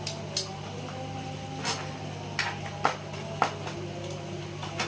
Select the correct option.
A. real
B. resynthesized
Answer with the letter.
A